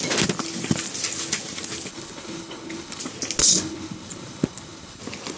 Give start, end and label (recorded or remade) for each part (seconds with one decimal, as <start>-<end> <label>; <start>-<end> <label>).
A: 0.0-1.9 recorded; 1.9-3.0 remade; 3.0-3.4 recorded; 3.4-5.0 remade; 5.0-5.4 recorded